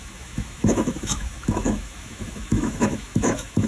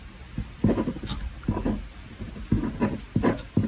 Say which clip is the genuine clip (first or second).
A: second